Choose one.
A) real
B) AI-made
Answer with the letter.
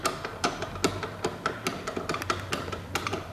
A